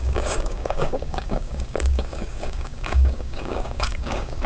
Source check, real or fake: fake